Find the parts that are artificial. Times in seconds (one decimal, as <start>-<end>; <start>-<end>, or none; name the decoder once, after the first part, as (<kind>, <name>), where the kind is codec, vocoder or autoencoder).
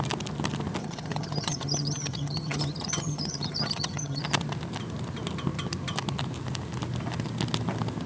0.8-4.2 (vocoder, HiFi-GAN)